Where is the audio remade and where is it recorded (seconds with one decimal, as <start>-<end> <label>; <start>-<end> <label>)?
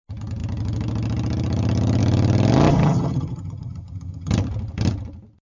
0.0-2.7 recorded; 2.7-4.3 remade; 4.3-5.5 recorded